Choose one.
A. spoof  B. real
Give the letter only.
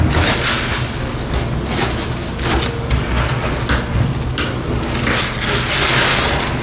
B